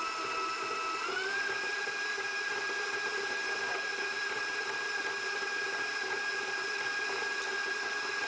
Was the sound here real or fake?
real